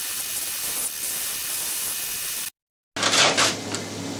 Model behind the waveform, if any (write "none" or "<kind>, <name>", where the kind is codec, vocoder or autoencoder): none